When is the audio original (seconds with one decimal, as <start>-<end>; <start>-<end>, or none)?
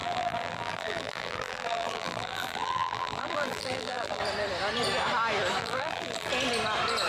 4.2-5.6; 6.3-7.1